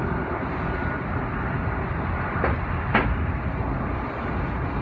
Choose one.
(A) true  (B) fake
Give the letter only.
A